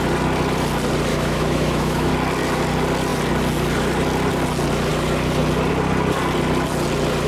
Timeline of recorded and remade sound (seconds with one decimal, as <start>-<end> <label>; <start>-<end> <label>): 0.0-1.1 recorded; 1.1-2.1 remade; 2.1-7.3 recorded